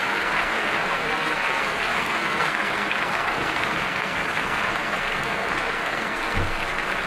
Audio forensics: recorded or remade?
remade